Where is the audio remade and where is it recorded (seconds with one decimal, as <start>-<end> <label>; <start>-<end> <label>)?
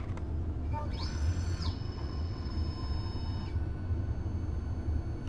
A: 0.0-0.9 recorded; 0.9-2.5 remade; 2.5-5.3 recorded